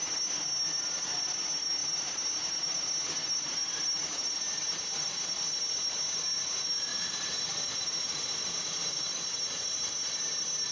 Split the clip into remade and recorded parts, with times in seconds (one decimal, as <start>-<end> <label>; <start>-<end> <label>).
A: 0.0-1.8 recorded; 1.8-5.3 remade; 5.3-6.9 recorded; 6.9-10.1 remade; 10.1-10.7 recorded